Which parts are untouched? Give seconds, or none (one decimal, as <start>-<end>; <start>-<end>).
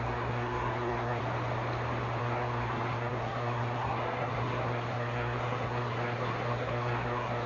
1.2-2.2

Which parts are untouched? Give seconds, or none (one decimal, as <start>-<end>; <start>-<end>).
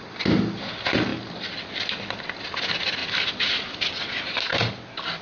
0.0-5.2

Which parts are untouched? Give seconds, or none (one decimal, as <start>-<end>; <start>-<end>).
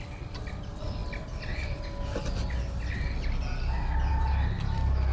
0.0-5.1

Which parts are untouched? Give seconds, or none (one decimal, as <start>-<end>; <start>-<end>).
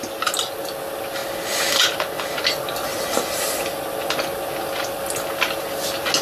0.0-6.2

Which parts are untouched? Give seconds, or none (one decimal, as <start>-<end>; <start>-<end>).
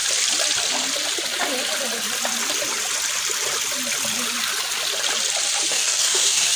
0.0-5.7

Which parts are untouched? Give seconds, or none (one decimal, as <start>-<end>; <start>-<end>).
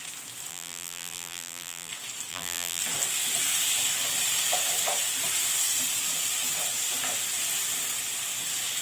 0.0-0.5; 1.9-2.3; 2.8-8.8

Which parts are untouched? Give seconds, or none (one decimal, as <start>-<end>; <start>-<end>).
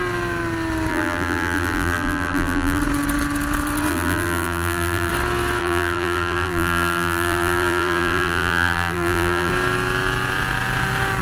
0.0-0.9; 2.8-3.9; 5.1-5.6; 9.5-11.2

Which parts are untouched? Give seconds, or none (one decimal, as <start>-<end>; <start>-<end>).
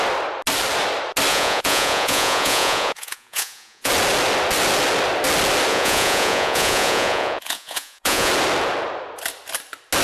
0.0-1.3; 3.9-5.7; 8.3-10.0